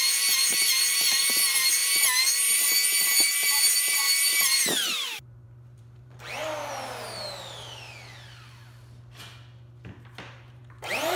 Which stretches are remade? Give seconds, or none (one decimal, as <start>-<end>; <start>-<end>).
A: 0.0-6.4; 10.3-11.2